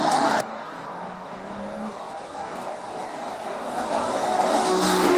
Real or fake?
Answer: fake